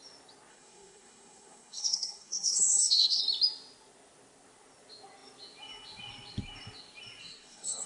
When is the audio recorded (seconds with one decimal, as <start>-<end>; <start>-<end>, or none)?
0.0-0.5; 3.2-7.2